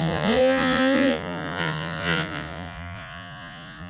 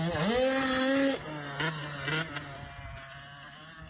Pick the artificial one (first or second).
first